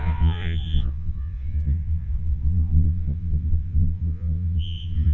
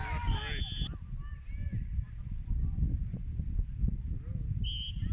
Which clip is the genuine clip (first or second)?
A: second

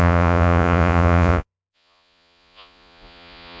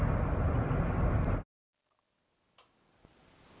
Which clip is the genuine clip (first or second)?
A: second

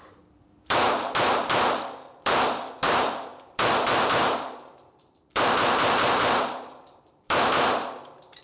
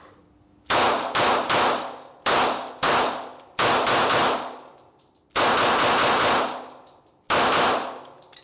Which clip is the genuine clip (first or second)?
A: second